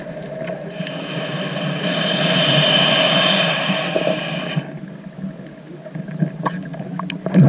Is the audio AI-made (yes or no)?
no